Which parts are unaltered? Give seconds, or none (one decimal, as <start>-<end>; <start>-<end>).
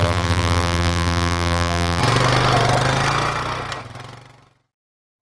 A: 2.0-5.2